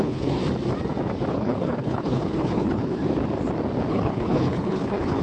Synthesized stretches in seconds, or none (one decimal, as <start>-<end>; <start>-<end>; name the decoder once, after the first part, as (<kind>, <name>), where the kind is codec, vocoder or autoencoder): 0.0-0.4 (codec, HILCodec); 1.3-3.0; 3.9-5.2